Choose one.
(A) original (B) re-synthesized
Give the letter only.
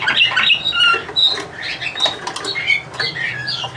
A